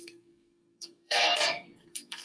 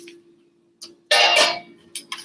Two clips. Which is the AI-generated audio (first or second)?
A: first